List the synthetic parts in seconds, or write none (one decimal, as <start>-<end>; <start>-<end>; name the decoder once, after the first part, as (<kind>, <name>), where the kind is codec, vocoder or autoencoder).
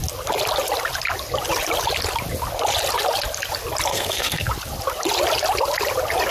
3.9-4.5 (codec, SNAC)